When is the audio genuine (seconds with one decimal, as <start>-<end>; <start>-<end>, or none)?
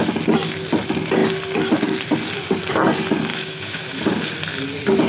0.0-3.3; 4.0-5.1